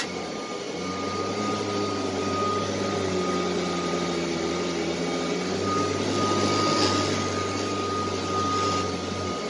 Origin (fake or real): real